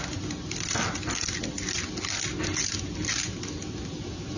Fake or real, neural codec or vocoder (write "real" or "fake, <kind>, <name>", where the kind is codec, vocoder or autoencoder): real